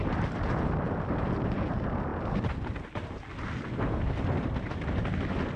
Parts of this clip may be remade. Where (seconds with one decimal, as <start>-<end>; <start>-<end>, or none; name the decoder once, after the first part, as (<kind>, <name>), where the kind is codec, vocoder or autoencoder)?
none